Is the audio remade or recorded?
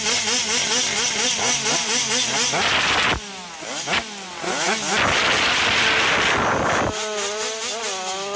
recorded